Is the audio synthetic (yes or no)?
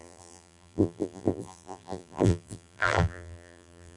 yes